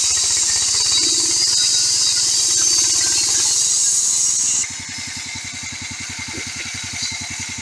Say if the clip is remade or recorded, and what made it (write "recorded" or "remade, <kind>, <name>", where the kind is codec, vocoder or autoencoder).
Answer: recorded